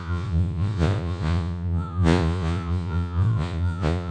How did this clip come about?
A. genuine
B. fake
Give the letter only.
B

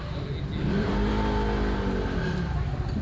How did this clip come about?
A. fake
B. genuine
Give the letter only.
B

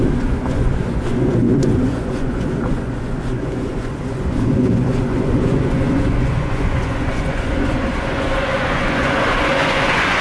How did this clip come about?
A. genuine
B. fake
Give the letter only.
B